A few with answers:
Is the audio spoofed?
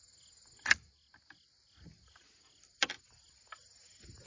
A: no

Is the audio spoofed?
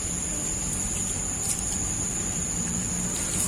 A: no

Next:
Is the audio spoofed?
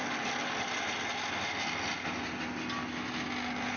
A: no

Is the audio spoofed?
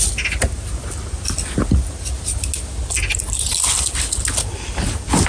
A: no